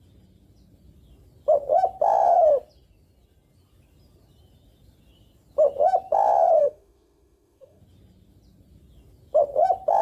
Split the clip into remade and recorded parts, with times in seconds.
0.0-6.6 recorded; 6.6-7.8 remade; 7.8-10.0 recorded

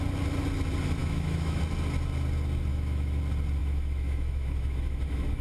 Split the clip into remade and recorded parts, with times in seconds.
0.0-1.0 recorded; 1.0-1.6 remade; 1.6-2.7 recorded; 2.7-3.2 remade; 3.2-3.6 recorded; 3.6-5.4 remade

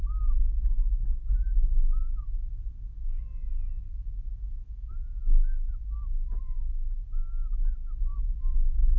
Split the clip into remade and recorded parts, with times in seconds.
0.0-9.0 recorded

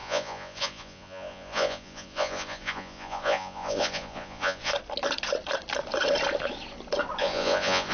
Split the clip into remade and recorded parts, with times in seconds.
0.0-4.7 remade; 4.7-7.2 recorded; 7.2-7.9 remade